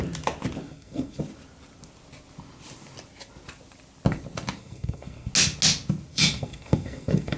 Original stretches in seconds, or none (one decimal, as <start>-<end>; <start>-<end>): 0.0-0.6; 1.2-4.6; 5.3-6.1